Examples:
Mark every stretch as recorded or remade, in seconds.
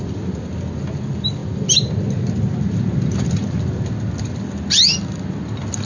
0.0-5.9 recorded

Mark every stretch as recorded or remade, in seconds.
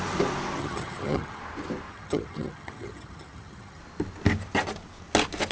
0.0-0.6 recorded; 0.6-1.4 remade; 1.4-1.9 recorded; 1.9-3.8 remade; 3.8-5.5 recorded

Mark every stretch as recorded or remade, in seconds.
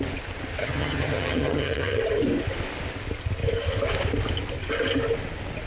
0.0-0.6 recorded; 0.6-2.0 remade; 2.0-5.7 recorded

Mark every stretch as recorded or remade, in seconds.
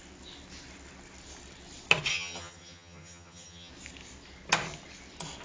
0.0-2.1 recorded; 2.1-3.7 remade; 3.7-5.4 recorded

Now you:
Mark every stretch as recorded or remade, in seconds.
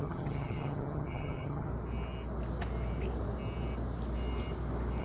0.0-1.7 remade; 1.7-5.0 recorded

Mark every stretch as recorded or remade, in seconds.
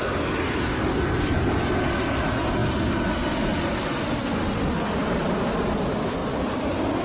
0.0-7.0 recorded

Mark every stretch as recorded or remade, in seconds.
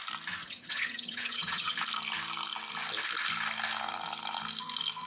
0.0-0.4 recorded; 0.4-1.7 remade; 1.7-5.1 recorded